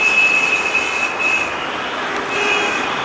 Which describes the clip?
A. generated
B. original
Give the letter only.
B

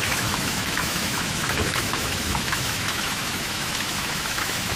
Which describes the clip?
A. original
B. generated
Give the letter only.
B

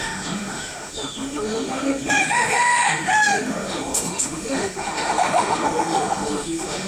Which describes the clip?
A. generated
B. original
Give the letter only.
A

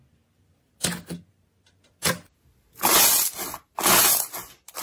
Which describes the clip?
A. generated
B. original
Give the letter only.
B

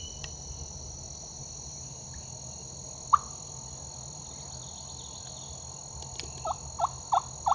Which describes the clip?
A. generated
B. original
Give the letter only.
B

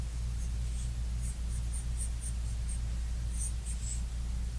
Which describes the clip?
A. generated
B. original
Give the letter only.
B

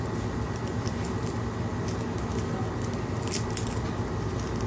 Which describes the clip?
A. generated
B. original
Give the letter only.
B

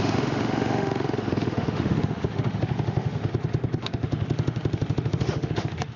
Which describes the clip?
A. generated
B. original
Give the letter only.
A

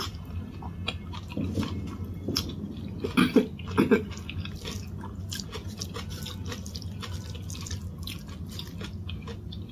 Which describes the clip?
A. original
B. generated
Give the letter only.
A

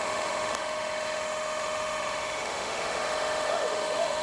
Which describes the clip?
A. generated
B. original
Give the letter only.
A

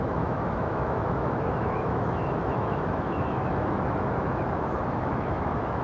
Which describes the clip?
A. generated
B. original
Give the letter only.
A